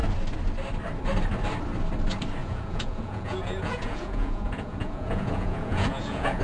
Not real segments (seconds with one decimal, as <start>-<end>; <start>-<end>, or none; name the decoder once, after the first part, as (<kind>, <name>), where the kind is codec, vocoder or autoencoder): 2.4-6.4 (vocoder, Vocos)